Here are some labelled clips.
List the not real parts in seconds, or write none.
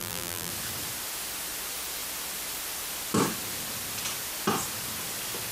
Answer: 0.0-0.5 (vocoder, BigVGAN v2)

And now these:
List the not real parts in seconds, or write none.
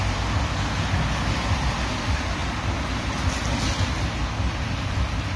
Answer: none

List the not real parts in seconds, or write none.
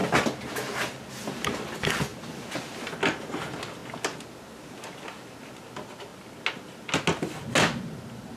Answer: none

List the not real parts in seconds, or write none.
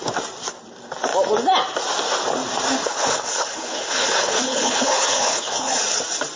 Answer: 2.8-5.8 (codec, HILCodec)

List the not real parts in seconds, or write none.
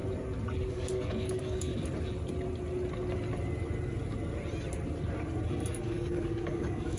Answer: 0.7-1.7 (codec, DAC); 5.8-7.0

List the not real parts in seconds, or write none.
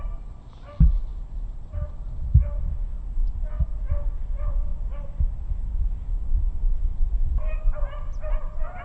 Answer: none